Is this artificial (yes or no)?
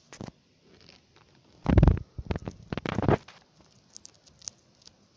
no